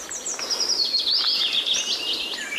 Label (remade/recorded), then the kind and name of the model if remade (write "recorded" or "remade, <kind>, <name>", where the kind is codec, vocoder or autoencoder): recorded